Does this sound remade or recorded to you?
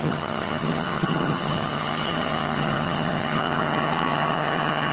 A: remade